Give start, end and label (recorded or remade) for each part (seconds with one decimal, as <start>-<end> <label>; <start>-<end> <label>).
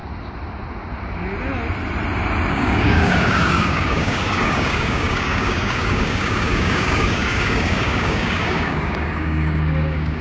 0.0-2.5 recorded; 2.5-10.2 remade